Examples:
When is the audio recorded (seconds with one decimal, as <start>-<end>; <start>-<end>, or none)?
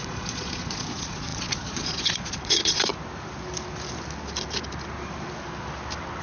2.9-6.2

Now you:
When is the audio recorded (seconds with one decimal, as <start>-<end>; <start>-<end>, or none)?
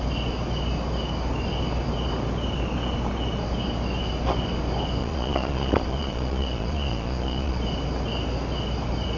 0.0-5.0; 7.6-9.2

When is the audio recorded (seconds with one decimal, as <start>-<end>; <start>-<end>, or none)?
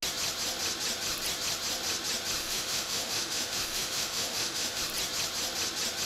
0.0-2.4; 4.8-6.1